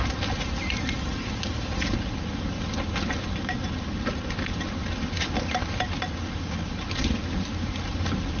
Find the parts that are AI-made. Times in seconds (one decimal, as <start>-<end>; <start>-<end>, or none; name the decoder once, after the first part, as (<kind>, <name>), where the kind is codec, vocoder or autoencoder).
none